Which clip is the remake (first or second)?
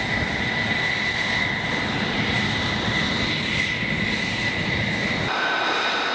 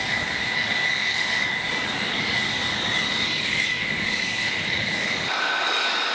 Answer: second